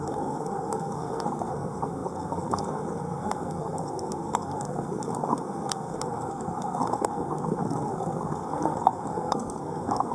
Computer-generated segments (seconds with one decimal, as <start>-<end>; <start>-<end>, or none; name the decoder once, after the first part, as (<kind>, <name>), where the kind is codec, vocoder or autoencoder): 0.0-10.1 (codec, SNAC)